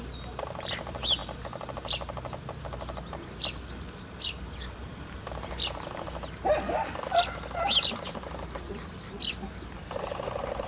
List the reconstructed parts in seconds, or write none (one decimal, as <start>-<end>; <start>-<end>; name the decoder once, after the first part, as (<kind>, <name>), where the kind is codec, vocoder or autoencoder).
none